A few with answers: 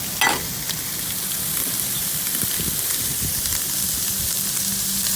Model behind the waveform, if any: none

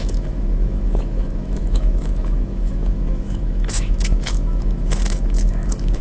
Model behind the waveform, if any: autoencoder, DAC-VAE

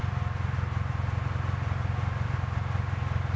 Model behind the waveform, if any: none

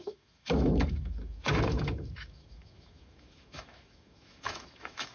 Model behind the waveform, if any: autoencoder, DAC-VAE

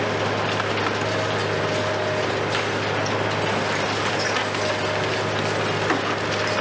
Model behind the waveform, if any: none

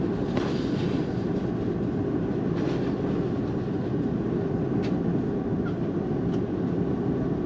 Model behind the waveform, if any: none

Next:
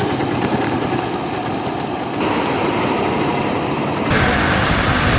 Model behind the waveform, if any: none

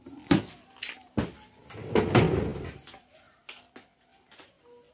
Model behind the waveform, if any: none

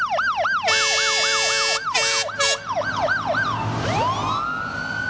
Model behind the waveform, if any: none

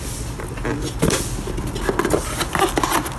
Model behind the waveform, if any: none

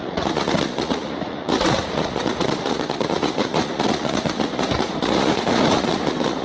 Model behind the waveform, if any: vocoder, Vocos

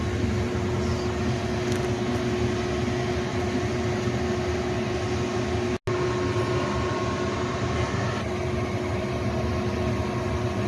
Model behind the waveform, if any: none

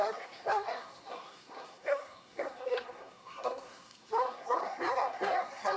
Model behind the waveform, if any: codec, SNAC